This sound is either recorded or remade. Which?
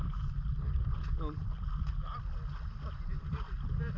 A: recorded